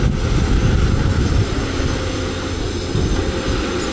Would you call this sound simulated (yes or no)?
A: no